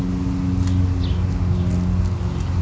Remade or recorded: recorded